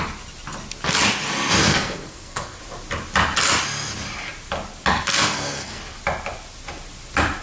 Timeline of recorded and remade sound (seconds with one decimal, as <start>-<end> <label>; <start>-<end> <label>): 0.0-1.6 recorded; 1.6-2.6 remade; 2.6-4.9 recorded; 4.9-5.8 remade; 5.8-7.4 recorded